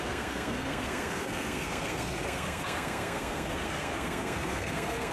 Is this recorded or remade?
remade